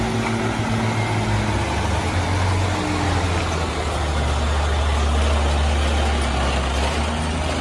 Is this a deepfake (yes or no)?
no